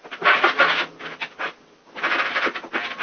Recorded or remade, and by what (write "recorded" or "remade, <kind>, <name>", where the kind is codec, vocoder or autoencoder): recorded